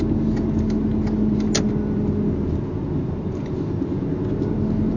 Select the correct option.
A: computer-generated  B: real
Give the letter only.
B